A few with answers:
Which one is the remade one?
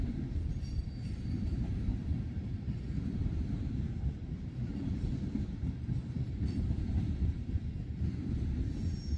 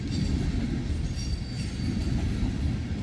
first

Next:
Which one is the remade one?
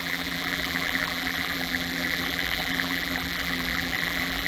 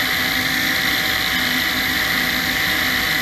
first